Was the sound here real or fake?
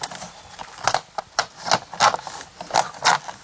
real